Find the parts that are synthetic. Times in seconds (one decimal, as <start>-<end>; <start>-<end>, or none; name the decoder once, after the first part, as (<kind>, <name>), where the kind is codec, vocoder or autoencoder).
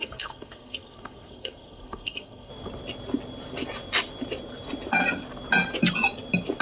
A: 0.0-2.5 (codec, SNAC)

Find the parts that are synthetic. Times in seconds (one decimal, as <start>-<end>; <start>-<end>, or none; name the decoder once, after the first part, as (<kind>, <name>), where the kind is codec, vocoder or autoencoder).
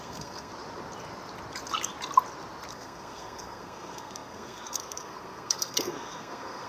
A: 0.0-0.5 (codec, SNAC); 2.7-6.7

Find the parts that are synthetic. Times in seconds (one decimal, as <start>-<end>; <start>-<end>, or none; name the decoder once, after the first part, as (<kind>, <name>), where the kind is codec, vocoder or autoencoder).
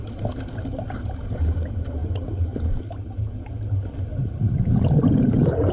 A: none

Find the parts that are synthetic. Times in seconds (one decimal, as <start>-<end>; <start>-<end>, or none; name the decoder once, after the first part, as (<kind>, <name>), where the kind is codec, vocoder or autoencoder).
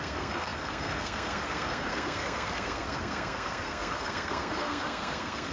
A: 0.0-5.5 (codec, SNAC)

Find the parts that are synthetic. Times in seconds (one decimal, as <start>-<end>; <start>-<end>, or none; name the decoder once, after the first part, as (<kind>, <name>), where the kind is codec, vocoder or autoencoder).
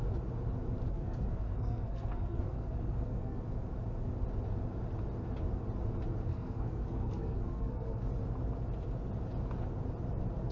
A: 0.9-3.4 (codec, SNAC); 6.3-8.0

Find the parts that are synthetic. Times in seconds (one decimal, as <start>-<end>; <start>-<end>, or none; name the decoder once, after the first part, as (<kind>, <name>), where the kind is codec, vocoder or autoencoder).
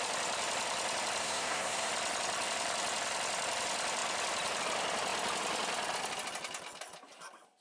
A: 1.2-1.9 (codec, SNAC)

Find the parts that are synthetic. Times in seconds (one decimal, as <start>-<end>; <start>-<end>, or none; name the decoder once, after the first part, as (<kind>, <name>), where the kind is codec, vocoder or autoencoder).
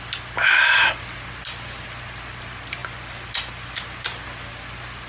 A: none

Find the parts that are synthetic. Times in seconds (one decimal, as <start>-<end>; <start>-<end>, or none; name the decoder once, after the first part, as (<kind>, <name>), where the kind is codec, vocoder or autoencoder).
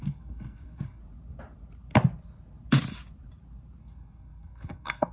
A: 0.0-1.0 (codec, SNAC); 3.8-5.1